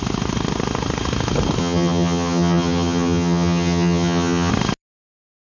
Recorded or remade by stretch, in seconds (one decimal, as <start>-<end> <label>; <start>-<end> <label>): 0.0-1.6 recorded; 1.6-4.5 remade; 4.5-5.5 recorded